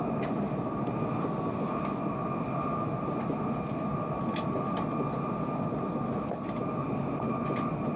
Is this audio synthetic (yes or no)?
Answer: no